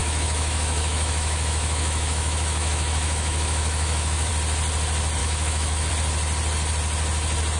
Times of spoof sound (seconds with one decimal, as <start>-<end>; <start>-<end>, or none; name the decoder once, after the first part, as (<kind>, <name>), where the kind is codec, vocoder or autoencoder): 0.0-4.3 (autoencoder, DAC-VAE); 5.2-5.9